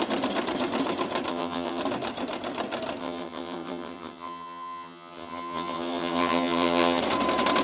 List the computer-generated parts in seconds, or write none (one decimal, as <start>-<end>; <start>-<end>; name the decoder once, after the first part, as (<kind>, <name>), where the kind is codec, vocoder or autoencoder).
1.3-1.8 (vocoder, HiFi-GAN); 3.0-7.0